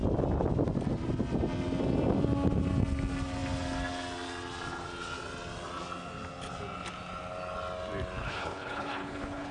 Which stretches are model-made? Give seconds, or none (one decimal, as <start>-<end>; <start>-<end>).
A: 8.2-9.5